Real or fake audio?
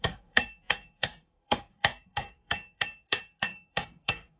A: fake